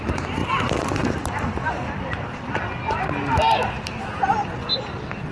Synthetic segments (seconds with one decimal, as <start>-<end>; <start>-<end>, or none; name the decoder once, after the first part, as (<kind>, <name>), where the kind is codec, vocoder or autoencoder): none